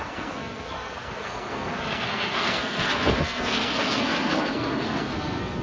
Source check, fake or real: fake